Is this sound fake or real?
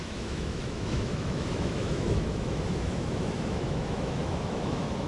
fake